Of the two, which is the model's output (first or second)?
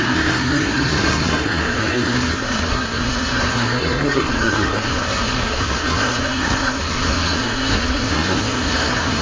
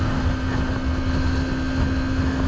first